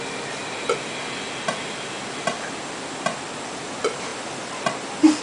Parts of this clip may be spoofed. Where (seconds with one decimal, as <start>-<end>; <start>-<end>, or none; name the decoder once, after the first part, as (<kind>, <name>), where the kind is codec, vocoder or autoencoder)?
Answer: none